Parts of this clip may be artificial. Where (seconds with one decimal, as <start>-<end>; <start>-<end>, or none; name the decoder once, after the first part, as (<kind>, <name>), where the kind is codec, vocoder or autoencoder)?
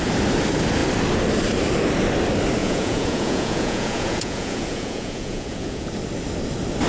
2.6-5.9 (vocoder, Vocos)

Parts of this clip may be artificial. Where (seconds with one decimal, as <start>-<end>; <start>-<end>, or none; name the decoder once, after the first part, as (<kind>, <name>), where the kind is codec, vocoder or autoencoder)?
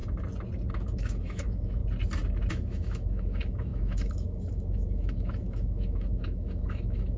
0.7-1.8 (autoencoder, DAC-VAE); 2.5-7.2